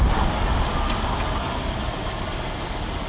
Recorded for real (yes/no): yes